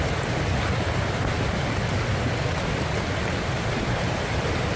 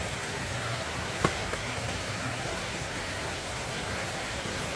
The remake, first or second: second